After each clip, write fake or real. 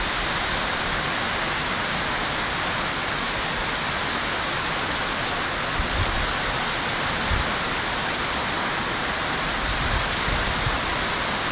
real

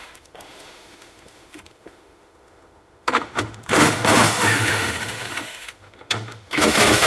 fake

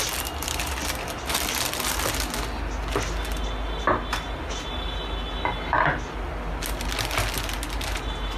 real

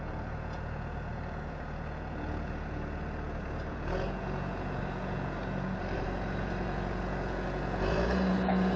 fake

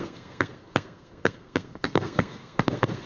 fake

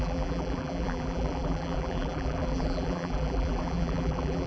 fake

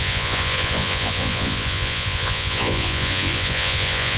fake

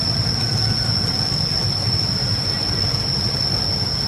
real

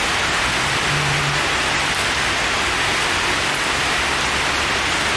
real